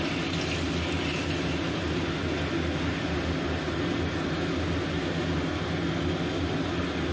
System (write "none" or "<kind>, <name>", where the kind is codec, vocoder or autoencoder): none